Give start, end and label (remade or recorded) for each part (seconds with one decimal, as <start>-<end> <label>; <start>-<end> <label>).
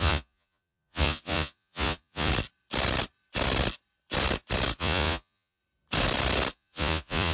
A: 0.0-2.3 remade; 2.3-4.8 recorded; 4.8-5.6 remade; 5.6-6.5 recorded; 6.5-7.3 remade